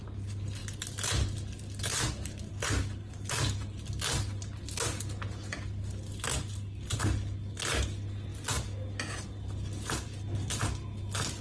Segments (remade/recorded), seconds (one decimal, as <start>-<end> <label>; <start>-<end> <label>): 0.0-11.4 recorded